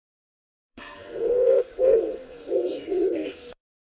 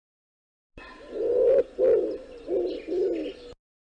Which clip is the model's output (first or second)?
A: first